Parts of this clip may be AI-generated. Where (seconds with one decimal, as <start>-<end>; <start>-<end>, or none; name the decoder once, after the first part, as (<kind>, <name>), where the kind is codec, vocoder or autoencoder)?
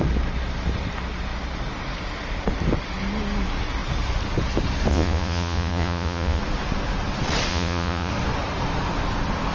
4.9-6.4 (vocoder, Vocos); 7.5-8.1